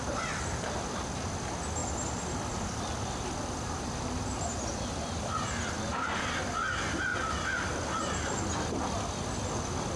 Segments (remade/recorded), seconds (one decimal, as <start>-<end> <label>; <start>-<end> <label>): 0.0-5.9 recorded; 5.9-6.4 remade; 6.4-7.1 recorded; 7.1-8.2 remade; 8.2-10.0 recorded